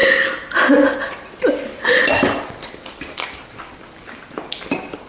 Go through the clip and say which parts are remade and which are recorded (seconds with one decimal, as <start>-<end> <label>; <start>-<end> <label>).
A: 0.0-0.6 recorded; 0.6-1.7 remade; 1.7-3.6 recorded; 3.6-5.1 remade